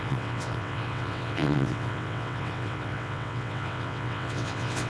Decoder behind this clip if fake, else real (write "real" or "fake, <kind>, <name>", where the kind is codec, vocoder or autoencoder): fake, vocoder, WaveNeXt